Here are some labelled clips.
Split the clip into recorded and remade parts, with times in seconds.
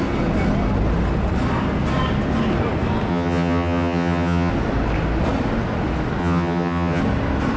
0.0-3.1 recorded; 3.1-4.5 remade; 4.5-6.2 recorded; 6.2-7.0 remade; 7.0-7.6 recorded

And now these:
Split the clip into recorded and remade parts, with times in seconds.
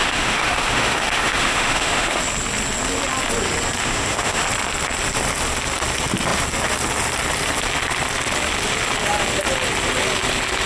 0.0-2.2 remade; 2.2-3.8 recorded; 3.8-4.4 remade; 4.4-10.7 recorded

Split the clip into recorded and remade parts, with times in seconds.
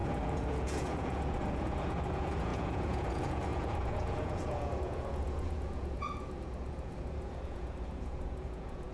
0.0-8.9 remade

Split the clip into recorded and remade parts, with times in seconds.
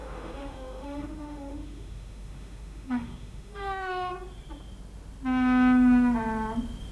0.0-4.1 remade; 4.1-6.9 recorded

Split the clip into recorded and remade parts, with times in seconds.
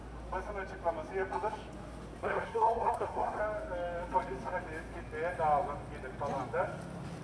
0.0-2.2 recorded; 2.2-3.4 remade; 3.4-7.2 recorded